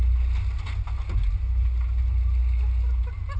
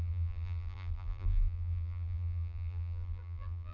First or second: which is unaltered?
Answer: first